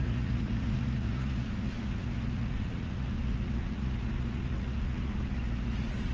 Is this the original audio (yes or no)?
no